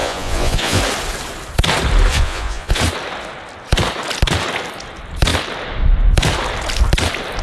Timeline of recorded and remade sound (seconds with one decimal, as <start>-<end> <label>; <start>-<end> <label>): 0.0-0.8 remade; 0.8-2.1 recorded; 2.1-2.8 remade; 2.8-7.4 recorded